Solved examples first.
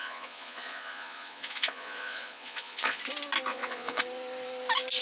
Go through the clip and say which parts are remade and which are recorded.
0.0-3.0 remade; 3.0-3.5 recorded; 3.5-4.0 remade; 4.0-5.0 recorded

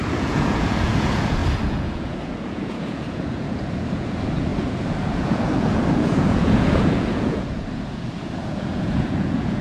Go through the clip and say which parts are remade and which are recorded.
0.0-9.6 remade

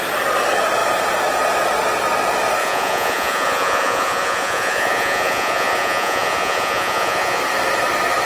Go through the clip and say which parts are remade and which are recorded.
0.0-2.6 recorded; 2.6-7.4 remade; 7.4-8.2 recorded

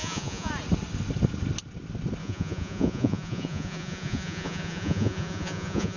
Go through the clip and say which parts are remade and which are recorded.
0.0-0.5 remade; 0.5-2.2 recorded; 2.2-6.0 remade

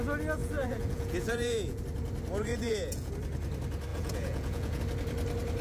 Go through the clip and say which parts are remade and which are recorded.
0.0-0.4 recorded; 0.4-1.8 remade; 1.8-2.5 recorded; 2.5-3.1 remade; 3.1-3.9 recorded; 3.9-4.8 remade; 4.8-5.6 recorded

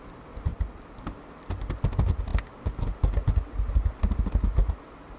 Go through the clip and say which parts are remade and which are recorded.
0.0-5.2 recorded

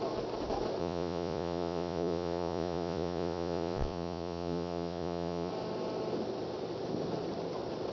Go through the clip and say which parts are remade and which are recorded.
0.0-0.8 recorded; 0.8-5.5 remade; 5.5-7.9 recorded

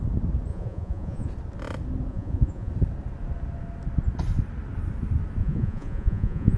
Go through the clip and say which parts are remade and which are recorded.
0.0-0.5 recorded; 0.5-1.3 remade; 1.3-2.1 recorded; 2.1-2.7 remade; 2.7-5.4 recorded; 5.4-6.6 remade